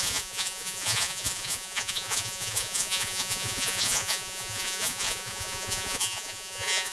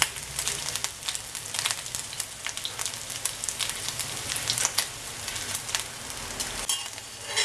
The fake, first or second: first